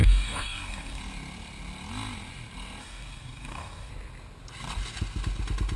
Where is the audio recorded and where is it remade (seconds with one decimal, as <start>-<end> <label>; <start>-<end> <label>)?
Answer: 0.0-1.0 remade; 1.0-2.8 recorded; 2.8-3.9 remade; 3.9-5.8 recorded